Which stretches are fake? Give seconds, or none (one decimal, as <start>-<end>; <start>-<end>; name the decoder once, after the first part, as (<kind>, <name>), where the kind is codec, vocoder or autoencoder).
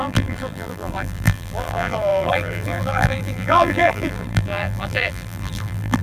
0.0-6.0 (vocoder, BigVGAN v2)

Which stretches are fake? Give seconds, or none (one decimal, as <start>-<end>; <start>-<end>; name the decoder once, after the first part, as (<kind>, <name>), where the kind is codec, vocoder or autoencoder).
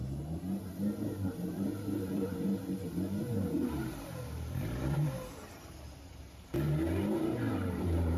0.0-8.2 (vocoder, BigVGAN v2)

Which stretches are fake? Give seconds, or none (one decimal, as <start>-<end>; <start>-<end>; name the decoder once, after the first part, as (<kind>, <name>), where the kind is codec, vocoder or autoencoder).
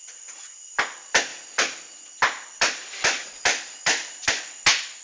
0.0-0.8 (vocoder, BigVGAN v2); 1.3-4.3